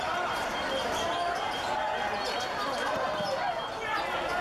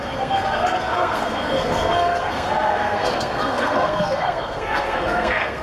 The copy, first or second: second